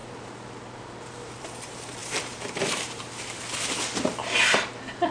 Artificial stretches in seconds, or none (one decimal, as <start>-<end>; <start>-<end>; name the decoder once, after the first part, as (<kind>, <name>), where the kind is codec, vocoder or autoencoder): 2.0-3.4 (vocoder, BigVGAN v2)